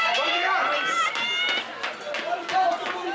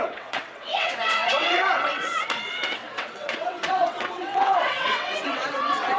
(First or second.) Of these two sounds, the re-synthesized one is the second